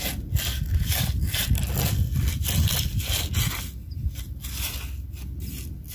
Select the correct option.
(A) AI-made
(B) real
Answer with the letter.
B